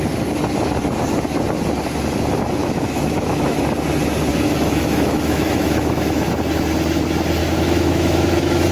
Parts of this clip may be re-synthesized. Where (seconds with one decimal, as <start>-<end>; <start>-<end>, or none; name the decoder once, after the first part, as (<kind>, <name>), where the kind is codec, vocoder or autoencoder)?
2.6-3.6 (autoencoder, DAC-VAE); 4.3-6.3; 7.4-8.7